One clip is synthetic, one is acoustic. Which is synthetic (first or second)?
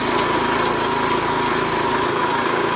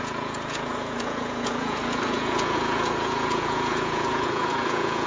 second